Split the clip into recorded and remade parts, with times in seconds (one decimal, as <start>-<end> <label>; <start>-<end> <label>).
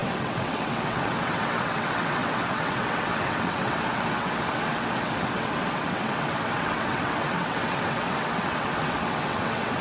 0.0-9.8 remade